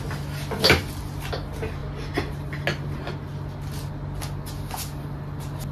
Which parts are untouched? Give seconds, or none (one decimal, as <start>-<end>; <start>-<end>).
0.0-5.7